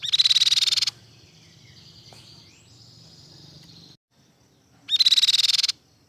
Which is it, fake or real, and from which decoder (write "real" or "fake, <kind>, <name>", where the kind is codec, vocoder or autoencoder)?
real